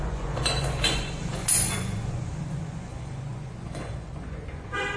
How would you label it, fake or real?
fake